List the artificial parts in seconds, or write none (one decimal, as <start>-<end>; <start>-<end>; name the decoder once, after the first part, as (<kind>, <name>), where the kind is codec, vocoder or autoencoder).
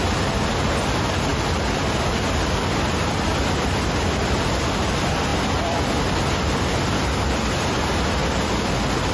none